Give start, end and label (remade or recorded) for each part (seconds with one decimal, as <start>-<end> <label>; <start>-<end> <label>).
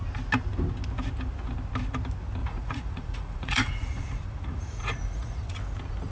0.0-2.4 recorded; 2.4-5.5 remade; 5.5-6.1 recorded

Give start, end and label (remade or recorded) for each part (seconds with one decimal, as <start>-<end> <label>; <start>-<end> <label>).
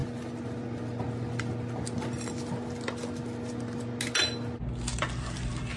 0.0-4.9 recorded; 4.9-5.8 remade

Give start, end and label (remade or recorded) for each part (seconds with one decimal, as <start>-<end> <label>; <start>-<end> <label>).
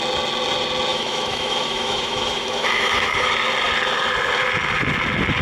0.0-0.9 recorded; 0.9-3.3 remade; 3.3-5.4 recorded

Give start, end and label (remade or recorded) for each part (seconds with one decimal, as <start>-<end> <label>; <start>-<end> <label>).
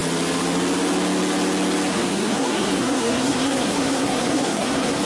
0.0-1.9 recorded; 1.9-5.0 remade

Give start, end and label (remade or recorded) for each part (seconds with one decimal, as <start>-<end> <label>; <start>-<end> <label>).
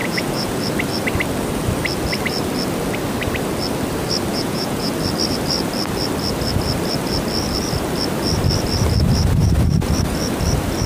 0.0-0.6 remade; 0.6-4.3 recorded; 4.3-4.9 remade; 4.9-10.9 recorded